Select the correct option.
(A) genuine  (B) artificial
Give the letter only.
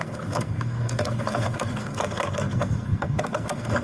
B